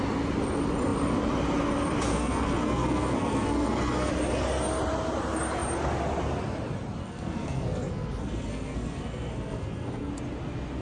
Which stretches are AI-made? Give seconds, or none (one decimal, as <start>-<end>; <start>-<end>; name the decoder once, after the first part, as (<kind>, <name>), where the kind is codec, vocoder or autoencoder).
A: 2.1-4.1 (codec, SNAC); 7.0-10.1